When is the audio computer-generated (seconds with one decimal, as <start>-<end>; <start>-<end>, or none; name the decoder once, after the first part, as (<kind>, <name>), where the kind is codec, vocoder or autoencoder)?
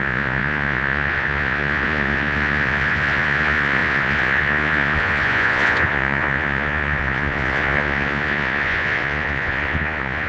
0.0-10.3 (vocoder, Vocos)